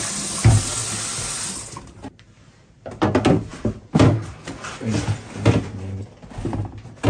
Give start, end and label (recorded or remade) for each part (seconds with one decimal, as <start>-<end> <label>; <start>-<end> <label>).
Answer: 0.0-7.1 recorded